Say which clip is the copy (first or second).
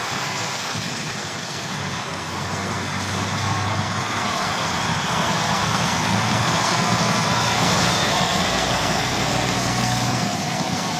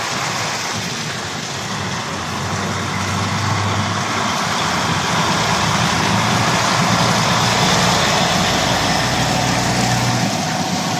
first